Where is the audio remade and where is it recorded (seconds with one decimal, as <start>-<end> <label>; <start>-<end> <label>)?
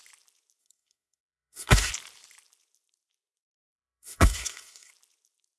0.0-0.6 recorded; 0.6-1.9 remade; 1.9-3.7 recorded; 3.7-4.9 remade; 4.9-5.6 recorded